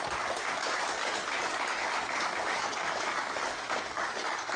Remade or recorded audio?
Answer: remade